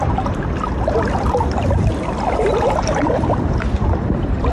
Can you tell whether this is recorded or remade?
remade